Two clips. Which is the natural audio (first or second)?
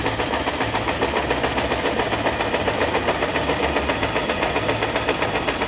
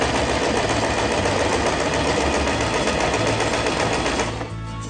second